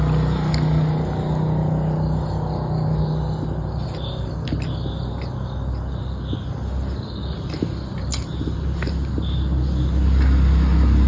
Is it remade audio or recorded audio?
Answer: recorded